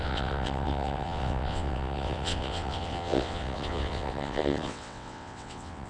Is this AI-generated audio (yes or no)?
yes